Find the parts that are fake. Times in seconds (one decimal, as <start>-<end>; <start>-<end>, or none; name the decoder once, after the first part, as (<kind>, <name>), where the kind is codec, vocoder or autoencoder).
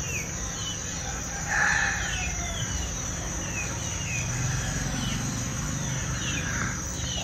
0.8-3.2 (vocoder, BigVGAN v2); 5.5-7.2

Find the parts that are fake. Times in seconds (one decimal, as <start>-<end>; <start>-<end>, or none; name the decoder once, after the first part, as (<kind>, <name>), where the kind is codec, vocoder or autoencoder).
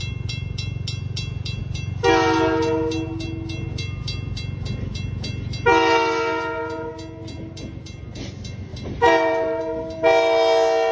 8.7-9.6 (vocoder, BigVGAN v2)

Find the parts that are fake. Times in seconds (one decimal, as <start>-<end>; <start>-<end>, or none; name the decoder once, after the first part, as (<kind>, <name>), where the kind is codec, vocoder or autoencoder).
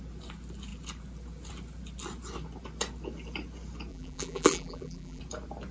3.9-5.2 (vocoder, BigVGAN v2)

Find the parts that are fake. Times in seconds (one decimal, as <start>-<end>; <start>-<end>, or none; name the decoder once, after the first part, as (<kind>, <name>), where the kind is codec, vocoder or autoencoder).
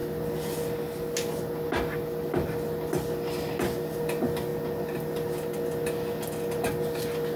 none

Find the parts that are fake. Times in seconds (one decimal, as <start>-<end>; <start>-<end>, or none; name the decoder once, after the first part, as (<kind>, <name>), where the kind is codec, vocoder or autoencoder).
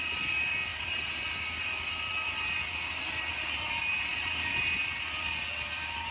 0.7-1.2 (vocoder, BigVGAN v2); 3.3-4.6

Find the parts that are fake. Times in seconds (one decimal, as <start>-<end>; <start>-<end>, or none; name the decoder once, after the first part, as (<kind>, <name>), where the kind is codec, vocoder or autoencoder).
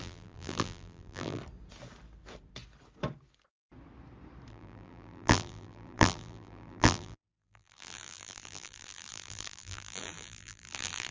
0.0-1.4 (vocoder, BigVGAN v2); 4.5-11.1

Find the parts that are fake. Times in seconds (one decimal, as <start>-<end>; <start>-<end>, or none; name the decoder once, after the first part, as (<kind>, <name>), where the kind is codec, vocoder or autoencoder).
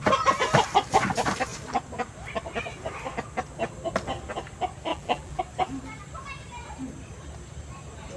4.9-5.4 (vocoder, BigVGAN v2)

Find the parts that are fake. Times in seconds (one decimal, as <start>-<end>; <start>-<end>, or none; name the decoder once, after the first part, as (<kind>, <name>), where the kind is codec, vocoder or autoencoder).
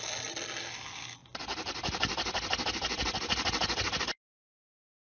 none